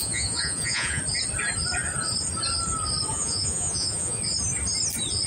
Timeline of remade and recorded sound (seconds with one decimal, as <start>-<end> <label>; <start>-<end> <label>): 0.0-1.0 remade; 1.0-3.1 recorded; 3.1-4.2 remade; 4.2-5.3 recorded